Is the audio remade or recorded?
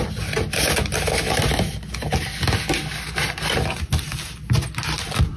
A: recorded